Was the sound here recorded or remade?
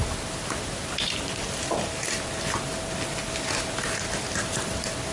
recorded